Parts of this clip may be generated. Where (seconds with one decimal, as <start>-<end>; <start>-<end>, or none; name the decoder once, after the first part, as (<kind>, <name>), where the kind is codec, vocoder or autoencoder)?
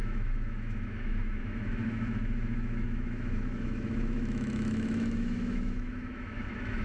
0.0-6.8 (autoencoder, DAC-VAE)